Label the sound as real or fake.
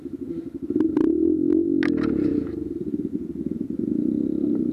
real